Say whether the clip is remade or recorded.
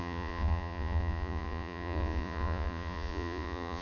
remade